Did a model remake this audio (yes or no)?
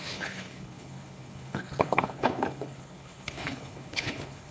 yes